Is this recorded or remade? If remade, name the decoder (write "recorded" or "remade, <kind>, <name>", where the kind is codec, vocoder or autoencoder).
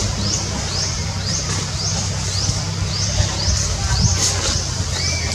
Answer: recorded